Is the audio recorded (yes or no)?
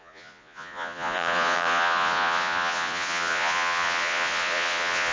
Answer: no